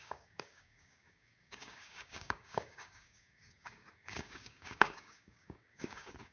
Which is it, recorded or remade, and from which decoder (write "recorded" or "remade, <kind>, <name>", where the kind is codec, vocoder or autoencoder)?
remade, codec, DAC